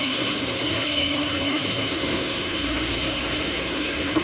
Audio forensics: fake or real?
fake